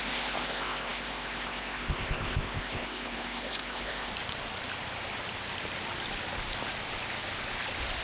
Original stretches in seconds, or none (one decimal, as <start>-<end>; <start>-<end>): 4.1-8.0